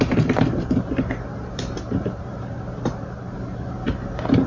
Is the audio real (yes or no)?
no